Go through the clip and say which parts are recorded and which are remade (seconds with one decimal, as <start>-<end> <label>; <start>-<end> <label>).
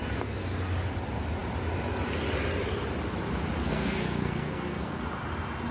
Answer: 0.0-3.6 recorded; 3.6-5.0 remade; 5.0-5.7 recorded